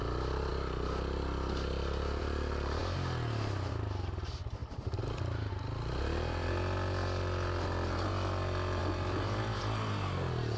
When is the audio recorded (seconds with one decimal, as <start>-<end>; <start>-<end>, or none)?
0.0-10.6